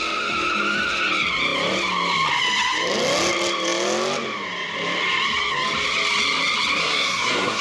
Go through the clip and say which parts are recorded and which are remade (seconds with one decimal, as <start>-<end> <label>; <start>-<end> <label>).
0.0-6.8 recorded; 6.8-7.6 remade